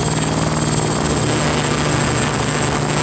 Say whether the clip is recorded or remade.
recorded